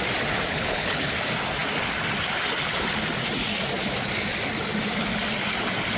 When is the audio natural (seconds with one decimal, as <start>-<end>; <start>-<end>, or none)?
0.0-0.5; 1.1-6.0